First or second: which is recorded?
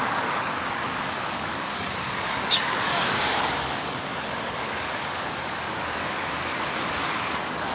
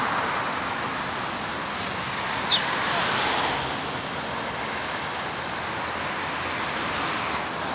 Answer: second